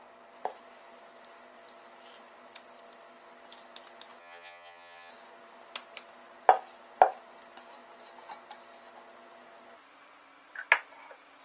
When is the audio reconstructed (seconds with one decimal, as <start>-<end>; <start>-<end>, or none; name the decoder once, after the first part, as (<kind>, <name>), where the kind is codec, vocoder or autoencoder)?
4.2-5.1 (vocoder, HiFi-GAN)